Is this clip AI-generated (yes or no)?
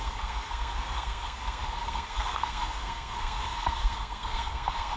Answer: yes